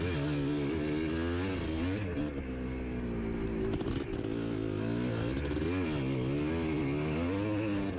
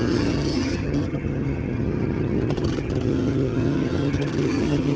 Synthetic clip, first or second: second